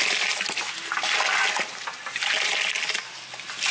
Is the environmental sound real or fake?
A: real